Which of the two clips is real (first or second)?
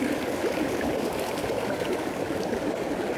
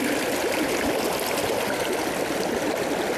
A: second